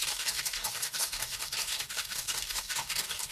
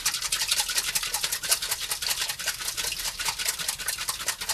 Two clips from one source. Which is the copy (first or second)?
first